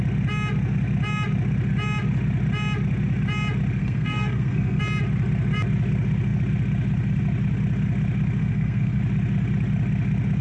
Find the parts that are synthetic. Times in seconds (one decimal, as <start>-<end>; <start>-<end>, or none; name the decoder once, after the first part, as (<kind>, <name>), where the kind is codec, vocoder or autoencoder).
3.8-4.8 (codec, SNAC); 8.4-9.0